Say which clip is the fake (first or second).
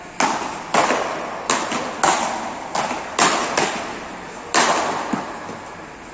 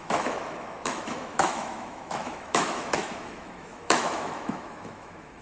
second